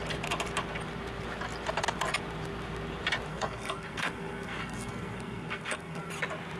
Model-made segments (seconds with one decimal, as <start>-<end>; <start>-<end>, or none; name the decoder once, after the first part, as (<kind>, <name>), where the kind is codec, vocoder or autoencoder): 3.3-6.1 (codec, SNAC)